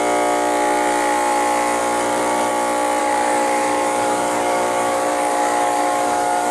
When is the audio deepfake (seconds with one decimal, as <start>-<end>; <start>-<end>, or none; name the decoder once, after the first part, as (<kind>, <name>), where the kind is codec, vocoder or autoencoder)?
3.0-6.5 (codec, DAC)

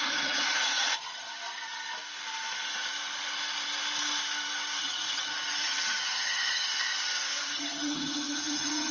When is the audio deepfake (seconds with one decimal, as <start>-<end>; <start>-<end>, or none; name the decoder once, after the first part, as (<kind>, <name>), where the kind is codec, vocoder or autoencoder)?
0.0-1.3 (vocoder, HiFi-GAN); 4.8-6.7; 7.4-8.9

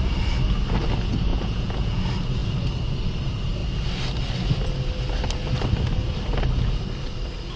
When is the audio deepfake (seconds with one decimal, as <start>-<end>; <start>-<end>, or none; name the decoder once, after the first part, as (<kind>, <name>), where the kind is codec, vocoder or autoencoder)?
1.3-2.0 (vocoder, Vocos)

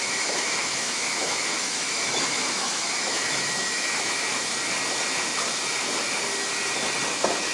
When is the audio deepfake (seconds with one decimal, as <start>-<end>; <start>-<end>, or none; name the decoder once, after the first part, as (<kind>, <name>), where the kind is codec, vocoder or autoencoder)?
0.0-4.5 (autoencoder, DAC-VAE)